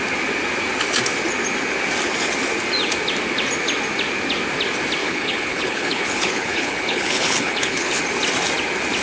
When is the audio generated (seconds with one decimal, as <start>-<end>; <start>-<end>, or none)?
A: 5.0-8.0